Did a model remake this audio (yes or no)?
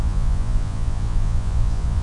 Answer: yes